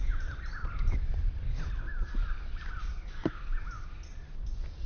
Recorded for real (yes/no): yes